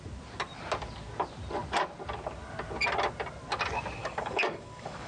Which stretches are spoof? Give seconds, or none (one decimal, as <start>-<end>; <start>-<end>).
4.0-5.1